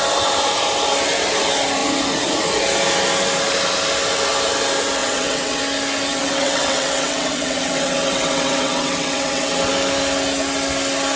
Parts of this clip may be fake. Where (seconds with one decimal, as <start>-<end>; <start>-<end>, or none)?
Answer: 5.0-5.6; 6.1-9.7